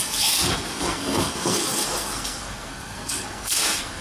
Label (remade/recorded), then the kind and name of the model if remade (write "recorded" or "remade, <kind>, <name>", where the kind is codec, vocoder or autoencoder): remade, codec, SNAC